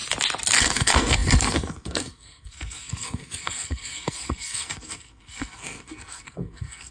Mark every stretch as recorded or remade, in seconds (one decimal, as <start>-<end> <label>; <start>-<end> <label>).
0.0-0.6 recorded; 0.6-6.9 remade